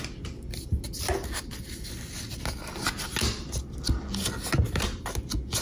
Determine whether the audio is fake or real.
real